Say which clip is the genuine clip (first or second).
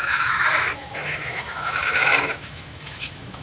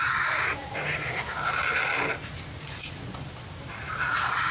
second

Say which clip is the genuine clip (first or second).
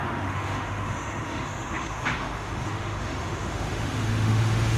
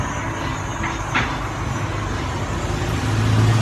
second